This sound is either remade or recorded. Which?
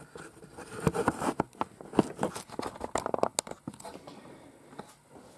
recorded